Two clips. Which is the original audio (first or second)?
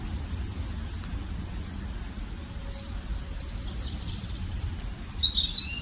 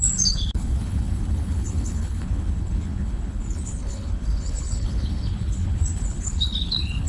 first